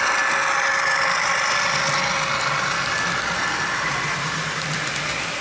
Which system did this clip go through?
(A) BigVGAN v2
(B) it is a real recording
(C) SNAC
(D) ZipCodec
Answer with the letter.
B